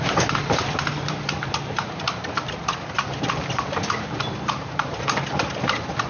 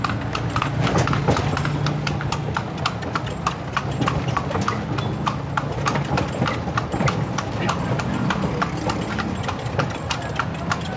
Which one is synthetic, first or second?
first